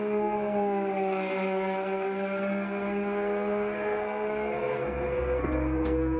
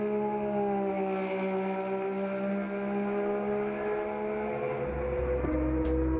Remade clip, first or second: first